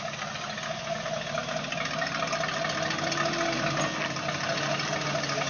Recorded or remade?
recorded